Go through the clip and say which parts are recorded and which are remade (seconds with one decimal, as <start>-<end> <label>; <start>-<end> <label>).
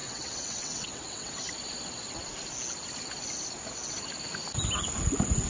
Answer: 0.0-1.5 remade; 1.5-5.5 recorded